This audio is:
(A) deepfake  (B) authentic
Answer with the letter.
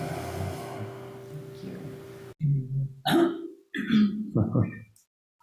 B